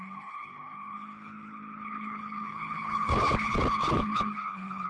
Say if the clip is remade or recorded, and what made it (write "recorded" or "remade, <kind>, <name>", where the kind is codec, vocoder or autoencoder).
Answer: remade, codec, HILCodec